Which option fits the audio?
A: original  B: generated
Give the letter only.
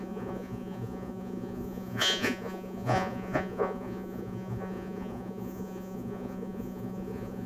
B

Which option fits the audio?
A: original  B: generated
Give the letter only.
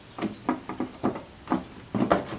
A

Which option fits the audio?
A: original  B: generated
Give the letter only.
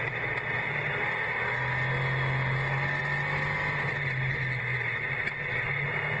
A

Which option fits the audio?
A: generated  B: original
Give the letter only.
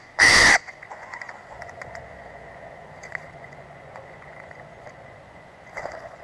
A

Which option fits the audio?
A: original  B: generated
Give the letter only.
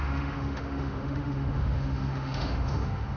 B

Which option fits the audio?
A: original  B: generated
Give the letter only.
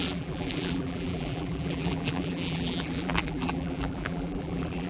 B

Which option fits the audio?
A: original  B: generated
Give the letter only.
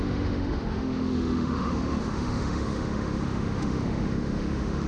B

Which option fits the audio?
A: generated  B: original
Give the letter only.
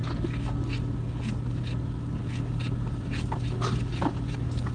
B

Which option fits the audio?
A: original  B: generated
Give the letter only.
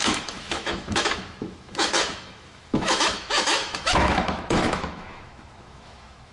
B